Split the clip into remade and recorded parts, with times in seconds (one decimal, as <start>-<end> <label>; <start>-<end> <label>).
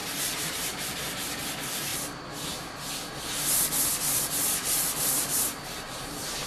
0.0-0.9 remade; 0.9-3.9 recorded; 3.9-6.5 remade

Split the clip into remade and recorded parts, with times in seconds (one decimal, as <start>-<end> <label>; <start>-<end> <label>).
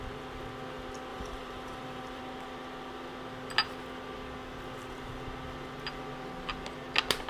0.0-1.1 recorded; 1.1-2.2 remade; 2.2-7.3 recorded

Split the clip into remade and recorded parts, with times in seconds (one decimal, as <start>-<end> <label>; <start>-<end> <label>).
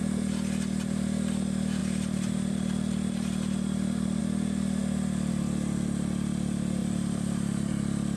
0.0-1.8 recorded; 1.8-4.2 remade; 4.2-6.8 recorded; 6.8-7.7 remade; 7.7-8.2 recorded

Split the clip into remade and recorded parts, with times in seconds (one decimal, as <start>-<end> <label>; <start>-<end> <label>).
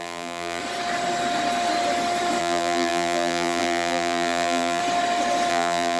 0.0-0.6 remade; 0.6-2.4 recorded; 2.4-4.8 remade; 4.8-5.5 recorded; 5.5-6.0 remade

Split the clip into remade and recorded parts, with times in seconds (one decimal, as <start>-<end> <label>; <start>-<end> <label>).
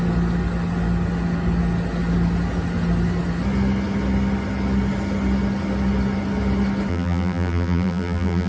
0.0-6.9 recorded; 6.9-8.5 remade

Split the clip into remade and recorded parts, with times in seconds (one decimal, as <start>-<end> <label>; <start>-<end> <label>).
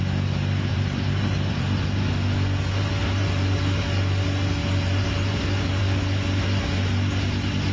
0.0-0.7 recorded; 0.7-1.6 remade; 1.6-7.7 recorded